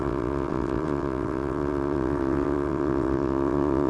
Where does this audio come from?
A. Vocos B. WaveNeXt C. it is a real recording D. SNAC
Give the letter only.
B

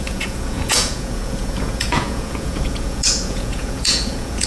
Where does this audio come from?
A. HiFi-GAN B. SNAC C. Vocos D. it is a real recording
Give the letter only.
C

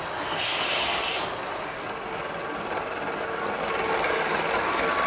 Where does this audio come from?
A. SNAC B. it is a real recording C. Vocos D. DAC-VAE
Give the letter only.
B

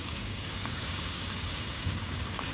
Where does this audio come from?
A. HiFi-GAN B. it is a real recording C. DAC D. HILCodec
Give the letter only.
C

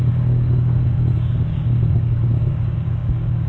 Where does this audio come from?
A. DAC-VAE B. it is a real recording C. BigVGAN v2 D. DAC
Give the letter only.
D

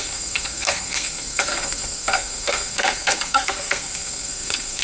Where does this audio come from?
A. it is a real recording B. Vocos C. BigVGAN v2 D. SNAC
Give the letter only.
D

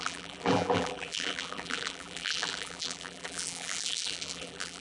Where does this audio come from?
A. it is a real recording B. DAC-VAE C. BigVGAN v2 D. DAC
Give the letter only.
C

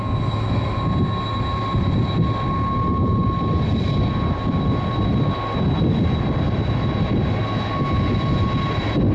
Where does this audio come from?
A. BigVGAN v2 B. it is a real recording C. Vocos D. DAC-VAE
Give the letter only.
B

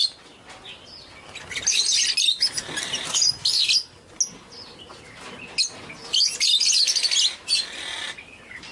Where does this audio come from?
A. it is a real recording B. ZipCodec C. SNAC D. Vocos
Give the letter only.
A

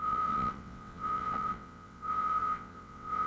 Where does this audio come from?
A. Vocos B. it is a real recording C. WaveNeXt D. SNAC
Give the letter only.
C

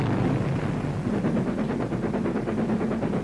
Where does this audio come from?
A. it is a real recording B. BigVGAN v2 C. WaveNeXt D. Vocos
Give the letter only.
A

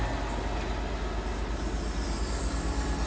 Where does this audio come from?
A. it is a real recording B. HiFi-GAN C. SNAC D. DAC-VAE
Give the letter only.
A